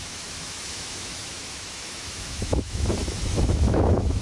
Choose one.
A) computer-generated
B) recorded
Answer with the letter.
A